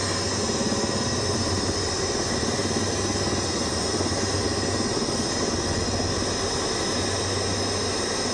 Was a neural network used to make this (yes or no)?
no